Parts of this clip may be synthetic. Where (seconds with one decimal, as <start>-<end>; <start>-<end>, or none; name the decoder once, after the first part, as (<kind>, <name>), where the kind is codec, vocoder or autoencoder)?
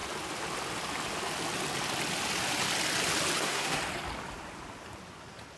3.4-3.8 (codec, SNAC)